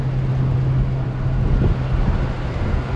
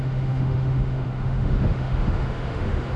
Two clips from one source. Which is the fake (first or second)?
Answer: second